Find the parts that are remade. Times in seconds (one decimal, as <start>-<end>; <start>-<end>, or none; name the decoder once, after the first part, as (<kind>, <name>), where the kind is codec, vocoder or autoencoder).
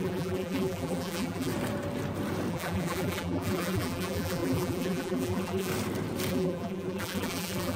0.0-1.5 (vocoder, BigVGAN v2); 2.5-5.7; 6.3-7.8